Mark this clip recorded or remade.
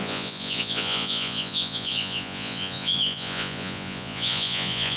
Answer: remade